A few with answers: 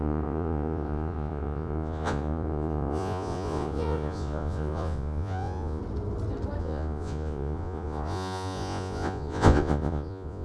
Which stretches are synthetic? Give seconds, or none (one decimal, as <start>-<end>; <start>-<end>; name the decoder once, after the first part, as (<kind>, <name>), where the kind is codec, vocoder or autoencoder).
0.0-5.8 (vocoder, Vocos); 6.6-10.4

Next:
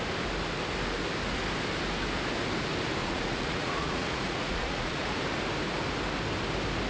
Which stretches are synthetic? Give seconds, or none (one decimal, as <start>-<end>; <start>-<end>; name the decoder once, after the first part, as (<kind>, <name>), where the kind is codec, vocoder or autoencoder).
3.0-5.2 (vocoder, Vocos)

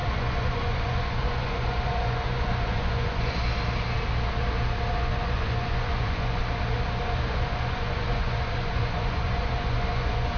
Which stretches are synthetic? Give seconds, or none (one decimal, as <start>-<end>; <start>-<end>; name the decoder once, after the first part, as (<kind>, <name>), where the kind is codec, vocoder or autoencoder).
0.0-3.4 (vocoder, Vocos); 4.9-6.4; 7.0-10.4

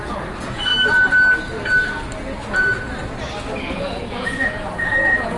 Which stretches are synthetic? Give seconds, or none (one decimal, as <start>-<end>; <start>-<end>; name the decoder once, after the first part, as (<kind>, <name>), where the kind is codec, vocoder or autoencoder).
0.0-0.7 (vocoder, Vocos); 3.7-5.4